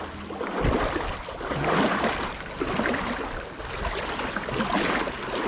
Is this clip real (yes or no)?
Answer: yes